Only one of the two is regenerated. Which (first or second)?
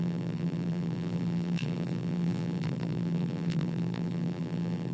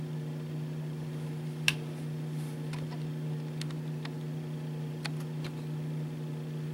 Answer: first